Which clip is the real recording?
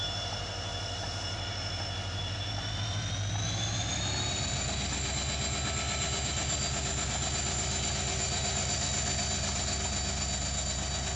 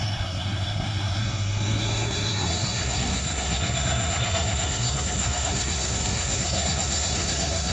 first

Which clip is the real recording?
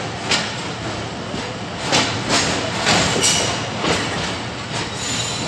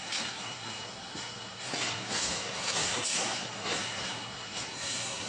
first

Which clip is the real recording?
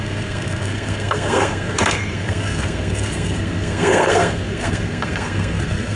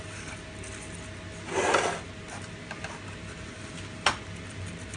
second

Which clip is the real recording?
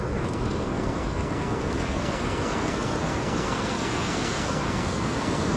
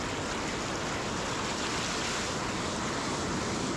second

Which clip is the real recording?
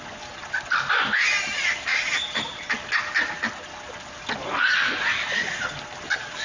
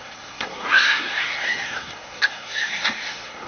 first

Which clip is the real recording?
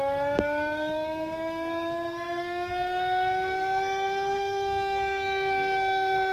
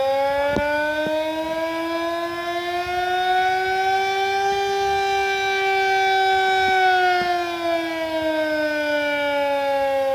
second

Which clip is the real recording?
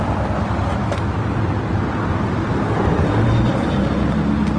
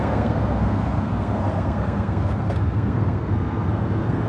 first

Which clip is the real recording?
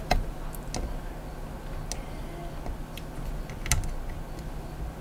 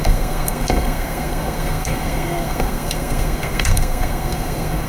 first